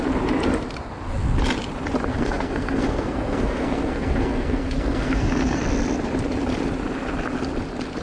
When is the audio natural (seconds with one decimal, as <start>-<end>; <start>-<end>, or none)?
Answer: 0.0-2.1; 5.6-8.0